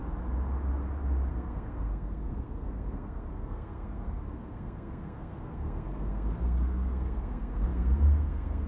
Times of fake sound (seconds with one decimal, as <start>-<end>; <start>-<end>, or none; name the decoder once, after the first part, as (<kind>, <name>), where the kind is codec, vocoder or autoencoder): 1.3-8.7 (codec, SNAC)